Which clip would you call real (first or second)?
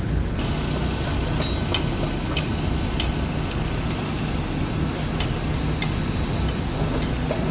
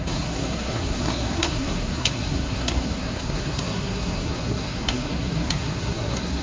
first